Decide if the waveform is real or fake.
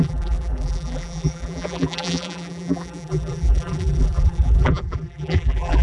fake